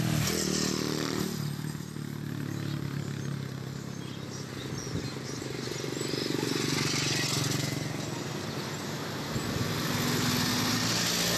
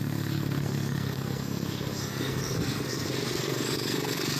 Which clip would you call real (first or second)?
first